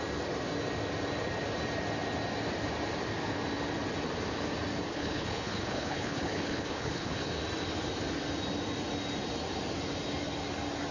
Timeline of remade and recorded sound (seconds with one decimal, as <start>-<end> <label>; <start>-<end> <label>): 0.0-4.9 recorded; 4.9-7.3 remade; 7.3-10.9 recorded